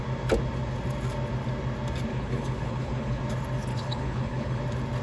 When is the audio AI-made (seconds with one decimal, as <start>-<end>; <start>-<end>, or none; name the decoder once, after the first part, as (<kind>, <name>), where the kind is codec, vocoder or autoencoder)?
2.1-3.2 (codec, HILCodec); 3.7-4.6

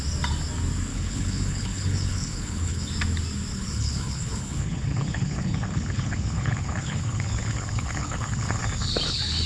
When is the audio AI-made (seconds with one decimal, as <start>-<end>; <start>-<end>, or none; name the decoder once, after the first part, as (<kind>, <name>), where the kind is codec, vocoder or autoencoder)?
0.9-2.9 (codec, HILCodec); 3.5-8.6

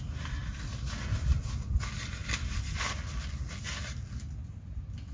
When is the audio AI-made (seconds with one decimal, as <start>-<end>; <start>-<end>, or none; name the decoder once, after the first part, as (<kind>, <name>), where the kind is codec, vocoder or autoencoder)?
none

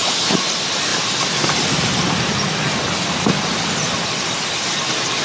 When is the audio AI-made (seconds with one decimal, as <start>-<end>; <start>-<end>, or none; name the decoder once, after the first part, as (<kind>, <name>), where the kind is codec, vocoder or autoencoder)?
none

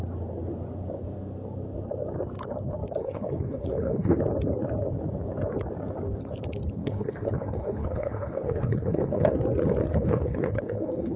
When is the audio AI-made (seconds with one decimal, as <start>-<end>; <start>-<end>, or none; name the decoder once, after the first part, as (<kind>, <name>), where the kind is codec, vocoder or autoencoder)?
3.0-4.2 (codec, HILCodec); 6.8-9.3; 9.9-11.2

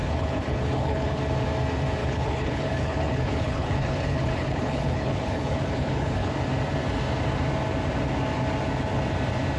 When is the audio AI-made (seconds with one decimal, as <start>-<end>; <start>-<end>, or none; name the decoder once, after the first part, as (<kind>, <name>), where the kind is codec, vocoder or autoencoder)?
0.0-1.2 (codec, HILCodec); 2.0-6.3

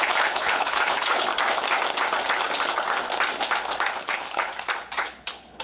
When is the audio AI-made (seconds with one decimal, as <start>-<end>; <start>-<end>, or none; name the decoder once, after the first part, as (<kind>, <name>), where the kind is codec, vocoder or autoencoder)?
0.0-1.3 (codec, HILCodec); 4.0-4.5; 5.0-5.6

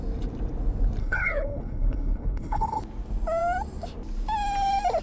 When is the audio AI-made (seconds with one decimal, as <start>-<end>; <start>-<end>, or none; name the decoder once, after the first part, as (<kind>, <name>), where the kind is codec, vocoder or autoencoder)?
1.0-2.8 (codec, HILCodec)